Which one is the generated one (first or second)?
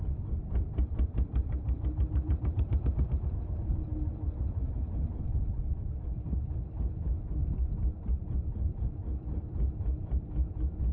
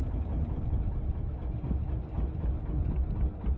first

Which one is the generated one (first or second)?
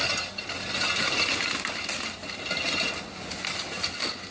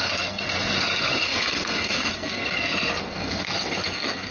second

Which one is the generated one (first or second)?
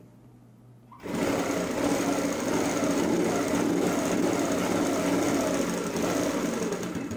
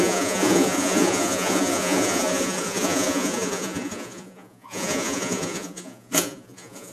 second